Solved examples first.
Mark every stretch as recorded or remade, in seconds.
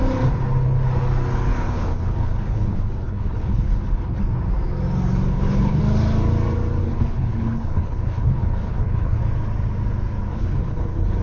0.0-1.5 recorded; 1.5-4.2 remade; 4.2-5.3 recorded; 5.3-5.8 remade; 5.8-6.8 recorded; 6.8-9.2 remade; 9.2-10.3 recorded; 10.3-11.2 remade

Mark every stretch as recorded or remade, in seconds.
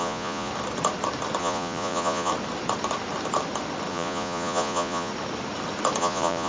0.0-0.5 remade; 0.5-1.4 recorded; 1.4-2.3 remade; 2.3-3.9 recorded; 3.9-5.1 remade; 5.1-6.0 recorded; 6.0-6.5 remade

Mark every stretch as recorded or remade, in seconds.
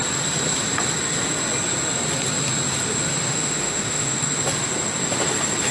0.0-3.3 recorded; 3.3-4.2 remade; 4.2-5.7 recorded